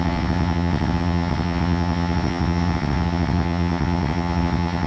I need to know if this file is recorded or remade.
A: remade